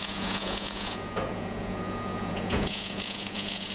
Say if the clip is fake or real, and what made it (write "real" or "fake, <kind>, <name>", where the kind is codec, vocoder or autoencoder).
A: fake, vocoder, Vocos